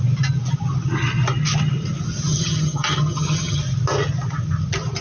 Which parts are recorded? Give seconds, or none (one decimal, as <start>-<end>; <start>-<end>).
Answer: 0.0-2.3; 3.6-5.0